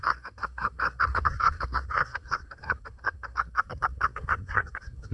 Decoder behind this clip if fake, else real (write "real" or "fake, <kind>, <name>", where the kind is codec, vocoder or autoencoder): fake, codec, SNAC